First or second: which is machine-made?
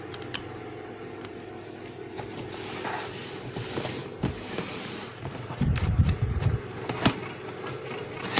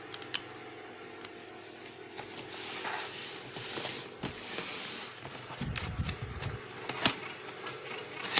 first